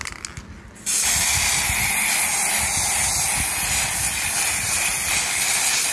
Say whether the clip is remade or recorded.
recorded